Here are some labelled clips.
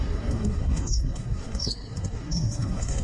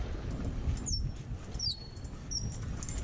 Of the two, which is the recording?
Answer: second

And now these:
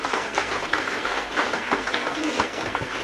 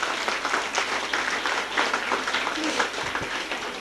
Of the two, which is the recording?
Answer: second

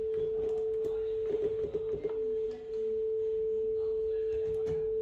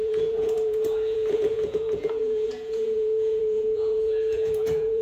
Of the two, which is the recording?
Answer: first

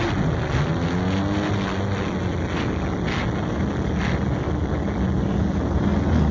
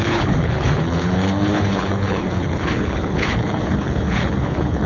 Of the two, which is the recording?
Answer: first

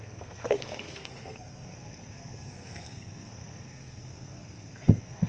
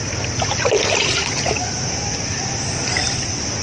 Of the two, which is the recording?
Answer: second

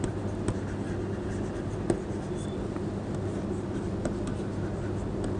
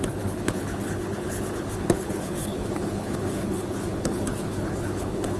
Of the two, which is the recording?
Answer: first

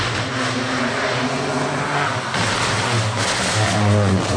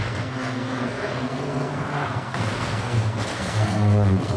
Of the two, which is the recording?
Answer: first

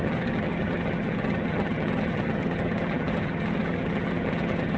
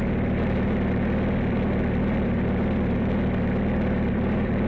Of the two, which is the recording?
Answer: second